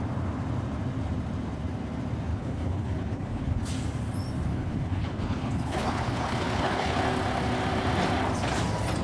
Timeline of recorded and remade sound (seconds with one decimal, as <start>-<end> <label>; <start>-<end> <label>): 0.0-2.3 recorded; 2.3-3.7 remade; 3.7-4.5 recorded; 4.5-7.0 remade; 7.0-9.0 recorded